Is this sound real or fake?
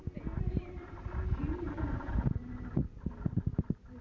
fake